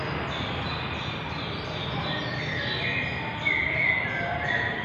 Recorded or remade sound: recorded